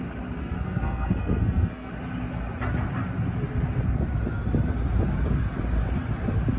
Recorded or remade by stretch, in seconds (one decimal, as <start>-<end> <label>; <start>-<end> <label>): 0.0-0.4 recorded; 0.4-1.9 remade; 1.9-6.6 recorded